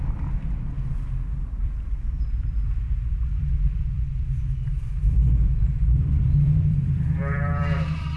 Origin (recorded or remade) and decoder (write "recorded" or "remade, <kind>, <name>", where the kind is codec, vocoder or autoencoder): remade, vocoder, BigVGAN v2